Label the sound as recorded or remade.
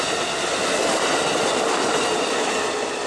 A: recorded